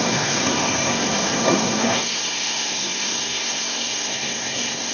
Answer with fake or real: fake